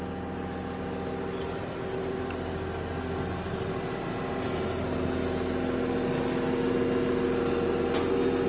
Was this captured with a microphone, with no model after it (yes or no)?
yes